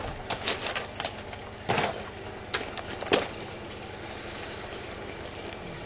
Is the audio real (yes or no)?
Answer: yes